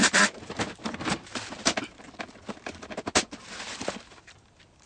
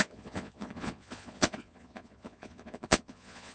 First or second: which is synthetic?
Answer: second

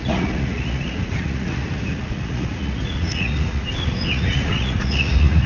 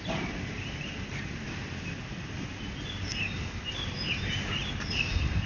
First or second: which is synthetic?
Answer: first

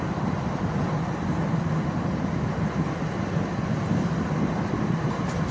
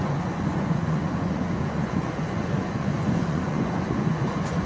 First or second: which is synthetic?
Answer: second